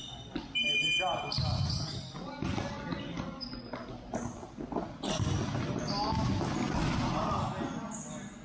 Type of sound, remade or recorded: recorded